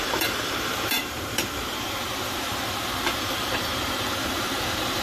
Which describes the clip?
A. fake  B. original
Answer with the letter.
A